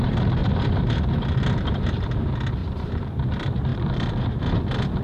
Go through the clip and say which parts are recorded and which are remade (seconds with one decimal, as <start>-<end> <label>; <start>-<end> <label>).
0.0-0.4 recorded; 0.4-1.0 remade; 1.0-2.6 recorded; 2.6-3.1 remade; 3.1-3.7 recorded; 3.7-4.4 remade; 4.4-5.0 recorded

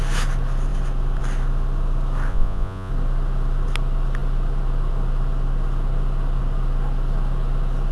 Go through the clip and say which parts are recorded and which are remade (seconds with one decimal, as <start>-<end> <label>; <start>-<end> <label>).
0.0-2.3 recorded; 2.3-2.9 remade; 2.9-7.9 recorded

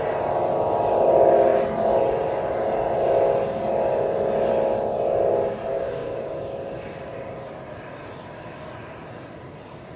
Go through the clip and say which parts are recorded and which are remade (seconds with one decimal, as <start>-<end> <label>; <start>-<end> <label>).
0.0-5.7 recorded; 5.7-6.4 remade; 6.4-10.0 recorded

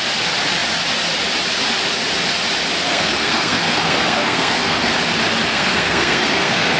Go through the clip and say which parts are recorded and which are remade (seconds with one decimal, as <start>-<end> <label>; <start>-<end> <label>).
0.0-2.8 recorded; 2.8-5.0 remade; 5.0-5.5 recorded; 5.5-6.8 remade

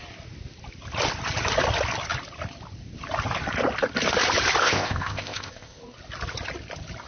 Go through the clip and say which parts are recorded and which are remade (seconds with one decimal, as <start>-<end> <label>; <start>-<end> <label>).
0.0-4.6 recorded; 4.6-5.8 remade; 5.8-7.1 recorded

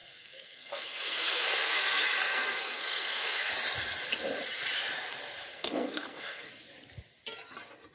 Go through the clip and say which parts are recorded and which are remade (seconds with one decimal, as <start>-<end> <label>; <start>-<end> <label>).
0.0-3.5 remade; 3.5-5.5 recorded; 5.5-6.5 remade; 6.5-7.9 recorded

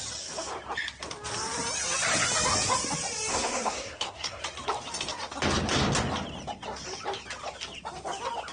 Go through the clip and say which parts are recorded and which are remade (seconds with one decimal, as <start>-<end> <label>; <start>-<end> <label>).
0.0-3.3 recorded; 3.3-4.4 remade; 4.4-8.5 recorded